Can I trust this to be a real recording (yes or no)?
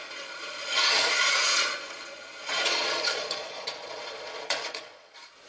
no